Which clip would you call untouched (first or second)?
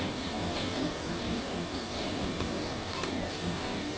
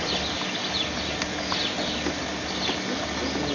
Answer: second